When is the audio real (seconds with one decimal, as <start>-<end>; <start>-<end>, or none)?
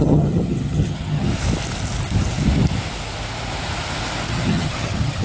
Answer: 1.3-4.3